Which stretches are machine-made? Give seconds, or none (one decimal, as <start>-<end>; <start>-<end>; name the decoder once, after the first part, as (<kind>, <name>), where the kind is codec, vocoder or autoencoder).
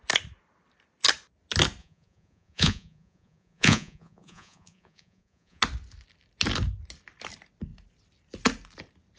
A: 1.8-5.6 (vocoder, Vocos)